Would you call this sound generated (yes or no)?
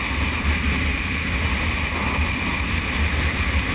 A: no